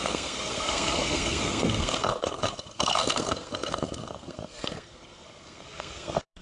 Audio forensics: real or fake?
fake